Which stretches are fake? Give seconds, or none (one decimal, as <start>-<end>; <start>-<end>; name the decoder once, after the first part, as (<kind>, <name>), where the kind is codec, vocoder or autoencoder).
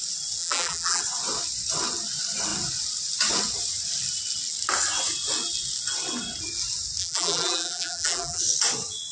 0.4-1.0 (vocoder, BigVGAN v2); 7.0-8.4